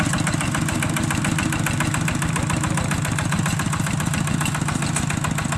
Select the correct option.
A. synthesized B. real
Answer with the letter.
B